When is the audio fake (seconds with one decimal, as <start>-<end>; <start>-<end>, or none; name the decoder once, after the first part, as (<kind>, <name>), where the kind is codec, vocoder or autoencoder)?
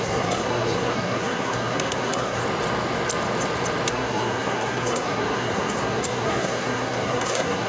0.0-2.4 (codec, SNAC); 3.9-7.7